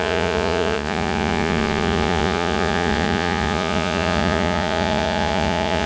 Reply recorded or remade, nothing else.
remade